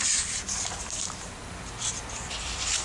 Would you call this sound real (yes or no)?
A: no